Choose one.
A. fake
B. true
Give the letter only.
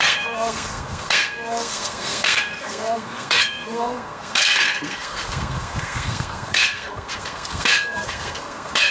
A